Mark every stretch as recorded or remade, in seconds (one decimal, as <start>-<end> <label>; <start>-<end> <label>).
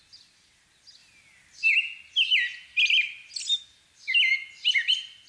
0.0-5.3 recorded